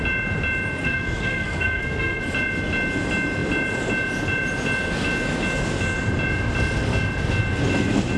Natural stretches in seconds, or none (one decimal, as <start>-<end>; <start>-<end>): 0.0-0.8; 2.2-8.2